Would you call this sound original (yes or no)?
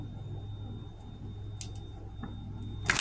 yes